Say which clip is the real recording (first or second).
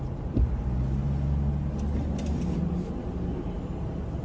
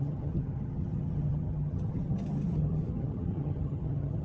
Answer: first